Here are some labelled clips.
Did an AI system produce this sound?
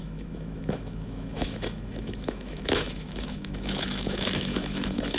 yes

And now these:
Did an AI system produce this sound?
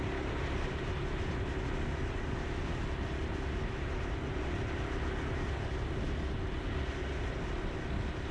no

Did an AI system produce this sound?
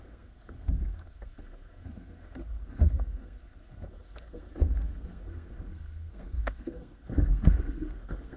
yes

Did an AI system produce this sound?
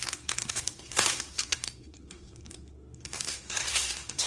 yes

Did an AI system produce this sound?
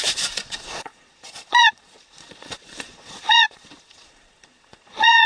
yes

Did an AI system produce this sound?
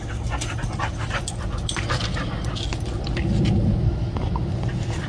no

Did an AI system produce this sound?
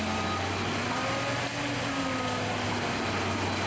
no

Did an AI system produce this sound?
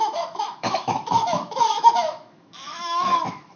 yes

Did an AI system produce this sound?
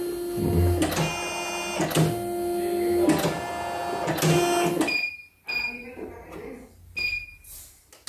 no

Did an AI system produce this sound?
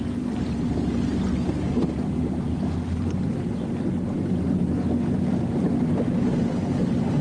no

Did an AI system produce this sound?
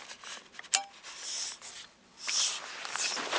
no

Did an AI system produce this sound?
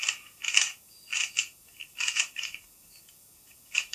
yes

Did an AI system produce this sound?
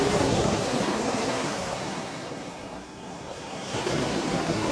yes